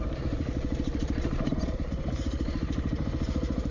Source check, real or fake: fake